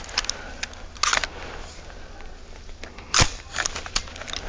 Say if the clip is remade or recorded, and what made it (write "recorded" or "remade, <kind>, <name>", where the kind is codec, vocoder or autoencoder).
recorded